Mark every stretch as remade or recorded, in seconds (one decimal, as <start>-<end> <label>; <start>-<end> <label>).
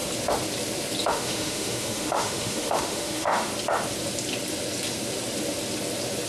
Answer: 0.0-1.1 recorded; 1.1-3.5 remade; 3.5-6.3 recorded